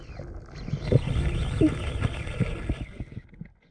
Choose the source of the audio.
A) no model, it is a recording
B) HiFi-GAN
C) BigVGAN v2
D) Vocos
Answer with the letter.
A